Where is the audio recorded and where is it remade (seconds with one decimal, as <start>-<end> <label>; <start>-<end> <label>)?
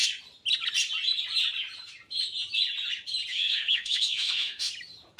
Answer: 0.0-3.3 recorded; 3.3-4.7 remade; 4.7-5.2 recorded